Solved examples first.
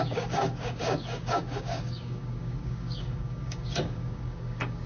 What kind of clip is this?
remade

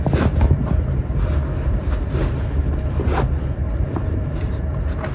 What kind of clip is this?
recorded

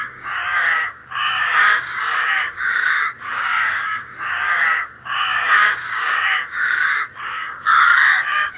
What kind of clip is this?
remade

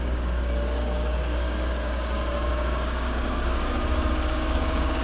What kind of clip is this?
remade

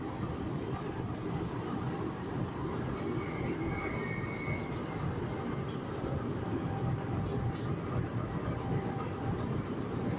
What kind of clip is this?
recorded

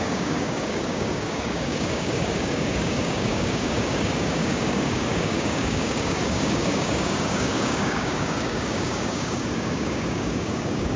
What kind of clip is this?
remade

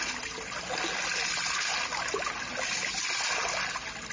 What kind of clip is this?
recorded